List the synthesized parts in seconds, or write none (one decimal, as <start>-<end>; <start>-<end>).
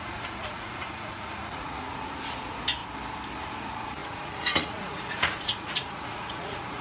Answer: 0.0-2.8; 3.4-6.8